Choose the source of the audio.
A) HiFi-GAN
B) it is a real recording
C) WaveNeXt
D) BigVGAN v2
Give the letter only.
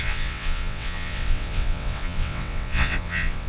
C